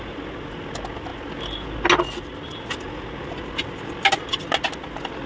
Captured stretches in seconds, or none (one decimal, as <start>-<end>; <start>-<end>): 0.0-5.3